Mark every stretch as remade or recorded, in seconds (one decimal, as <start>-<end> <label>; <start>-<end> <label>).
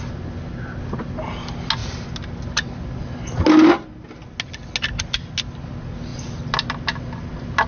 0.0-7.7 recorded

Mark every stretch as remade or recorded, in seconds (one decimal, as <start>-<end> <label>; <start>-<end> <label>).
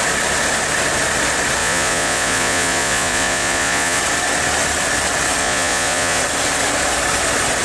0.0-1.6 recorded; 1.6-4.0 remade; 4.0-5.4 recorded; 5.4-6.2 remade; 6.2-7.6 recorded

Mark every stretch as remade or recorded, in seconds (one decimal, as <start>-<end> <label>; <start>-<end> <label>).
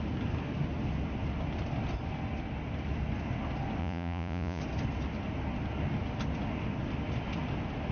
0.0-3.8 recorded; 3.8-4.6 remade; 4.6-7.9 recorded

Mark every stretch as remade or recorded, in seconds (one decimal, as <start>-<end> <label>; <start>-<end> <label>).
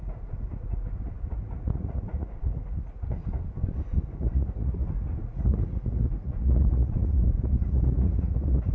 0.0-3.2 remade; 3.2-4.1 recorded; 4.1-8.7 remade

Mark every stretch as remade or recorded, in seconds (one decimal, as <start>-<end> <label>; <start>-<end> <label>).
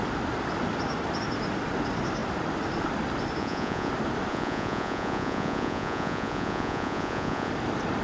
0.0-3.4 recorded; 3.4-3.9 remade; 3.9-4.3 recorded; 4.3-7.5 remade; 7.5-8.0 recorded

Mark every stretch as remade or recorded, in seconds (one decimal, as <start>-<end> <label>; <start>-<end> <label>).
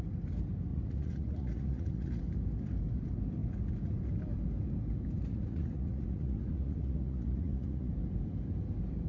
0.0-0.7 recorded; 0.7-2.2 remade; 2.2-5.3 recorded; 5.3-7.9 remade; 7.9-9.1 recorded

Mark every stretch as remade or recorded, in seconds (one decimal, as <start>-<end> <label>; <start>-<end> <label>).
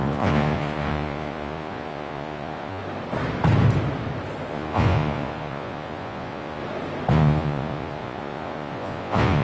0.0-2.8 remade; 2.8-4.5 recorded; 4.5-6.6 remade; 6.6-7.1 recorded; 7.1-9.4 remade